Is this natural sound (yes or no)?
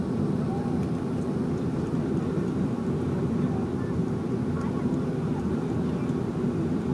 yes